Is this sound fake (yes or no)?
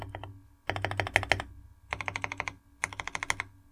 no